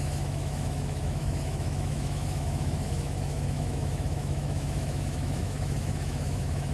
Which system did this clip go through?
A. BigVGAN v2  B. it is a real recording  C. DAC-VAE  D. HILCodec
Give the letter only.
C